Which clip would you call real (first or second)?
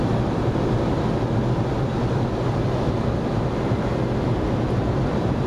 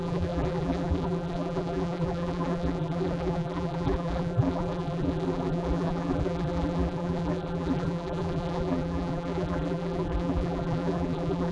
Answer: first